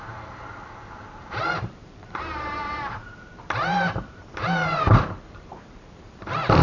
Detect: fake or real fake